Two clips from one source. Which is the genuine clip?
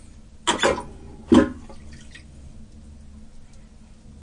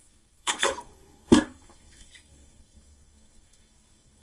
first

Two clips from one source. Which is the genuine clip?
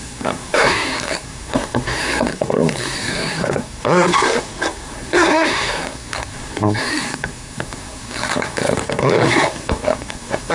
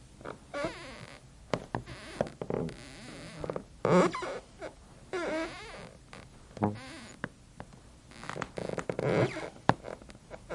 second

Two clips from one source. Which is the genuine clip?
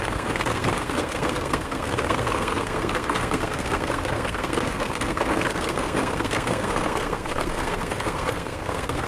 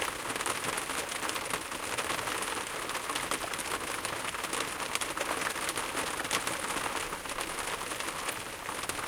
second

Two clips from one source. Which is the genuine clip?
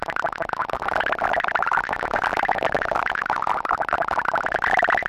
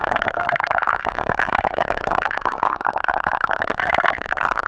first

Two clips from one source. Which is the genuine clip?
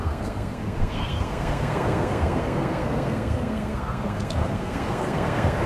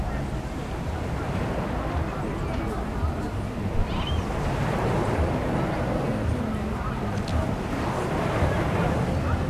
second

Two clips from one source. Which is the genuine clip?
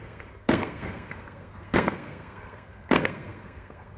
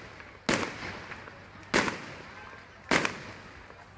second